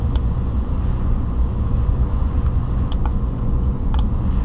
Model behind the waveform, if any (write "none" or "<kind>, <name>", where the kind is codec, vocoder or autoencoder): vocoder, Vocos